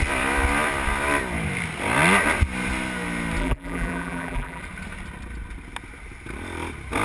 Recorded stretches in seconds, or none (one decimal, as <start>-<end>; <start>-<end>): 0.0-3.4; 4.6-7.0